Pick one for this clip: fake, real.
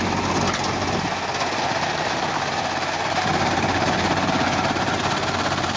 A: real